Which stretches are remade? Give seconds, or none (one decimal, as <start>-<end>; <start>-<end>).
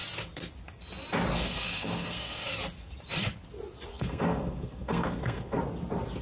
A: 1.3-2.5; 3.9-5.6